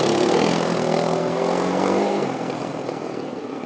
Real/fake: fake